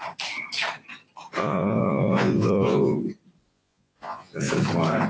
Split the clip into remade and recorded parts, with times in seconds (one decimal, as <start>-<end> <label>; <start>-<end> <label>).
0.0-1.4 recorded; 1.4-3.0 remade; 3.0-3.5 recorded; 3.5-4.5 remade; 4.5-5.1 recorded